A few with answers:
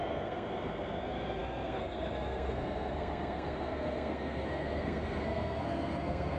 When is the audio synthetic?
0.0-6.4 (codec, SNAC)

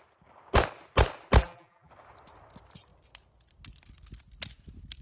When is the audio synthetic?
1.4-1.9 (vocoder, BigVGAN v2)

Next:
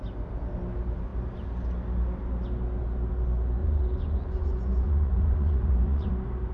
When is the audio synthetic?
3.6-6.1 (vocoder, Vocos)